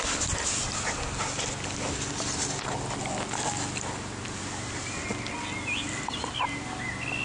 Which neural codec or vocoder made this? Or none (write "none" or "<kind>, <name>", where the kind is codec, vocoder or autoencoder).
none